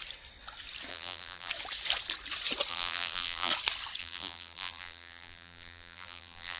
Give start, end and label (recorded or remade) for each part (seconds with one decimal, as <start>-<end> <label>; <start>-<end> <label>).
0.0-0.9 recorded; 0.9-1.5 remade; 1.5-2.7 recorded; 2.7-3.5 remade; 3.5-4.0 recorded; 4.0-6.6 remade